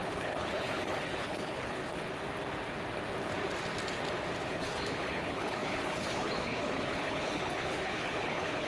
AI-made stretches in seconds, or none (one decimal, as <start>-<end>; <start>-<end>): 0.0-1.8; 4.5-8.7